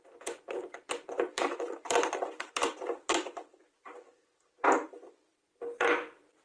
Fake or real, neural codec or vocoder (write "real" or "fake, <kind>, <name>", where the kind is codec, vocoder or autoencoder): fake, vocoder, BigVGAN v2